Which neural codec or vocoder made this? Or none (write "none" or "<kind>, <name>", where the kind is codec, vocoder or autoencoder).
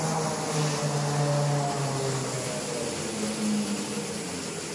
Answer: none